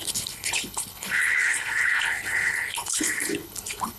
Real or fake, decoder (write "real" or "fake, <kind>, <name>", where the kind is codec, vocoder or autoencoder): fake, codec, HILCodec